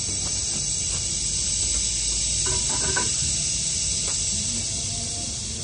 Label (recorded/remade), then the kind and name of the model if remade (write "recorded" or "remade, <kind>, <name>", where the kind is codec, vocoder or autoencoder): recorded